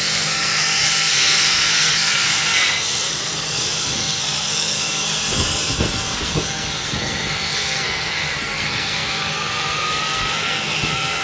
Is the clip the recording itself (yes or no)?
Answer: no